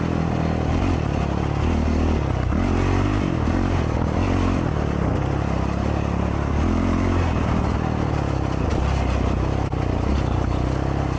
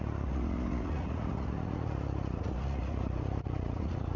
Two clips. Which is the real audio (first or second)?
first